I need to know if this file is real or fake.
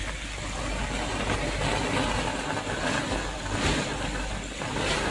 real